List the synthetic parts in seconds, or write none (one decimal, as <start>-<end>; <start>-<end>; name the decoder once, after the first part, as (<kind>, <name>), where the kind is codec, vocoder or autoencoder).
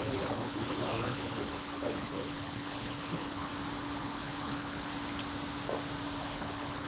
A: 0.0-3.5 (codec, HILCodec); 4.0-4.9; 6.2-6.9